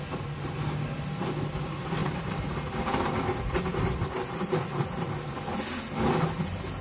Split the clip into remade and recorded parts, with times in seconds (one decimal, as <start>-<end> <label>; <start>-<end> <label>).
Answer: 0.0-6.8 recorded